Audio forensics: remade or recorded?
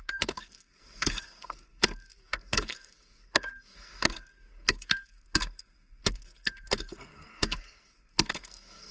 remade